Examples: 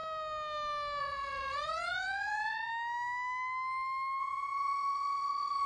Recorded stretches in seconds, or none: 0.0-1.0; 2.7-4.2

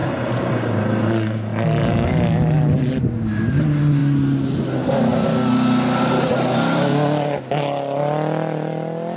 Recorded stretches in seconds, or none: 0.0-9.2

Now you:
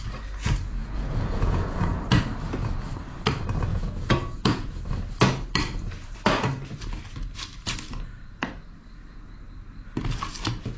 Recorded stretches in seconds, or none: 0.0-0.8; 2.0-3.7; 4.7-10.8

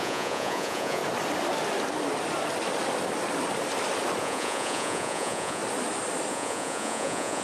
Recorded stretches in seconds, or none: 1.0-4.2; 5.6-6.3

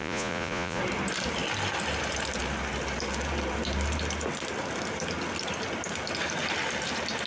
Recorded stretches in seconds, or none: 0.8-7.3